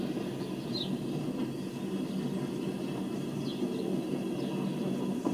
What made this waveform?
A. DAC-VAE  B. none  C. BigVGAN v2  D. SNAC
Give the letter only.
B